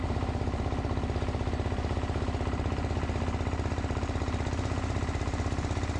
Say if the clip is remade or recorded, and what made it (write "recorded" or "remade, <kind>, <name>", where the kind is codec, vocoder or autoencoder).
recorded